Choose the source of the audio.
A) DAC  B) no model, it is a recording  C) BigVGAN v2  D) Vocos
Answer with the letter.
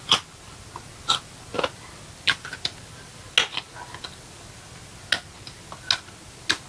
B